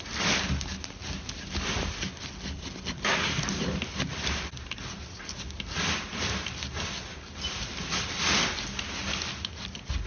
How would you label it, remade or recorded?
recorded